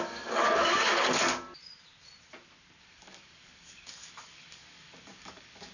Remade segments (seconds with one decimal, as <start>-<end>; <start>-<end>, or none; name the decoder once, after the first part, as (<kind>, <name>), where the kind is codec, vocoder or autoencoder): 0.0-1.3 (codec, DAC); 2.8-5.7